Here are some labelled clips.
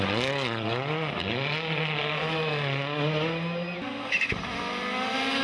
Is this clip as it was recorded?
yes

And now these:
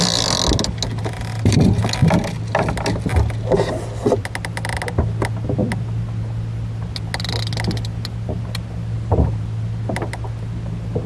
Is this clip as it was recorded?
yes